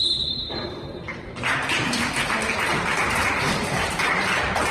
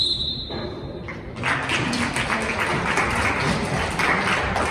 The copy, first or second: first